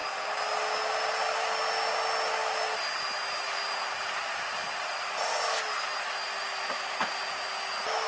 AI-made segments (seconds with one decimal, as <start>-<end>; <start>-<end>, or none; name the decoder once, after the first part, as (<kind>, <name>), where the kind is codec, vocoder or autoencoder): none